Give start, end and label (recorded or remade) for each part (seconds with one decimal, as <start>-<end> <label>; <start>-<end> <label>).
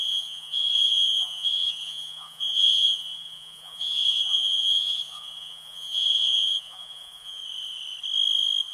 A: 0.0-7.4 remade; 7.4-8.7 recorded